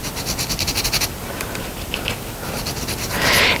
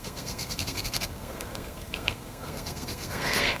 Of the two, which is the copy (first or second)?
second